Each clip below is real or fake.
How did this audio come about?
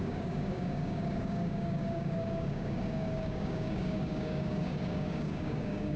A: fake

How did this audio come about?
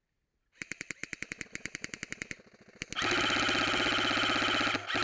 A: real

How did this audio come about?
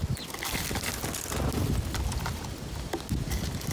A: real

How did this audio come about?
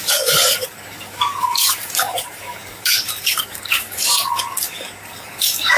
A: fake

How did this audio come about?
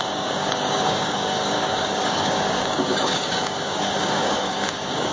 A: fake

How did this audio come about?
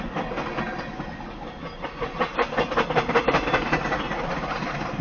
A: real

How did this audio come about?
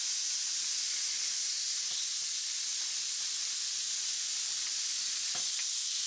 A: real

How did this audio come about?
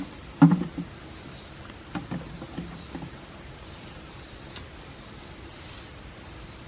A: real